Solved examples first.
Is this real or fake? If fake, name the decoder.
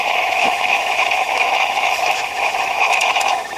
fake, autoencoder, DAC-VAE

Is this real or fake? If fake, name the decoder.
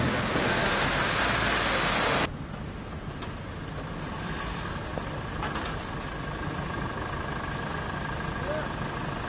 real